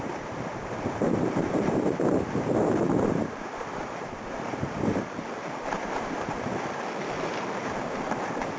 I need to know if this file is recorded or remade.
remade